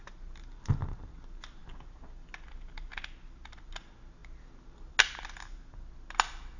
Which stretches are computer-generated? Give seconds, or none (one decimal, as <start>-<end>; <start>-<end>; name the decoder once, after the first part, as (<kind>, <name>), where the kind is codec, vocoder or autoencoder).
none